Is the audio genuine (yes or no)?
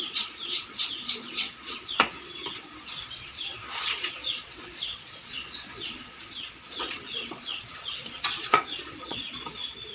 no